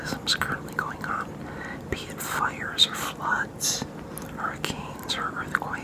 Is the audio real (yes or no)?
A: yes